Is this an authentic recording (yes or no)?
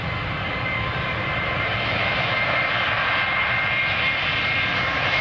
no